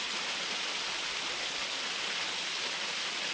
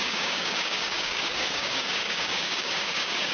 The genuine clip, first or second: first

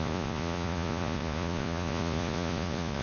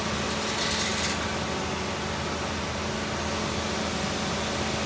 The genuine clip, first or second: second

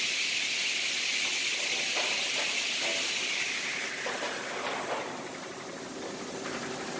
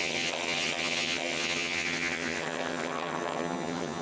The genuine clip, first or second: first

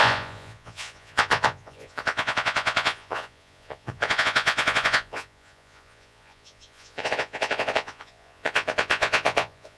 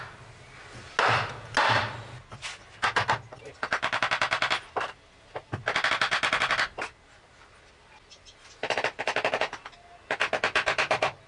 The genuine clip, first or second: second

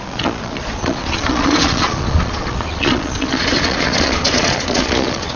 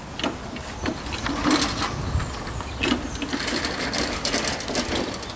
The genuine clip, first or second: second